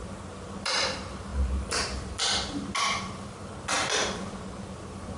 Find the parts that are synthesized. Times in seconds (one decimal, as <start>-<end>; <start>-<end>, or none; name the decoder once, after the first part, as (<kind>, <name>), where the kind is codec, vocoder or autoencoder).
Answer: none